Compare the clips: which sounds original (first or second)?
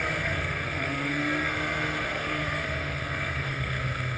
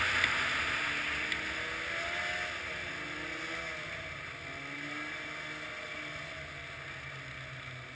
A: second